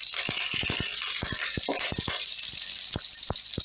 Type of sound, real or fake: fake